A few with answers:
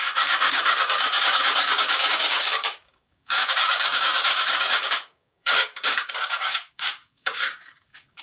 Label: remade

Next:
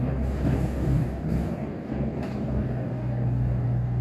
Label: remade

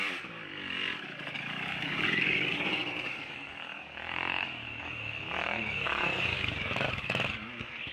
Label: remade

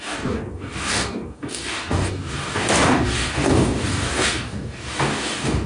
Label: remade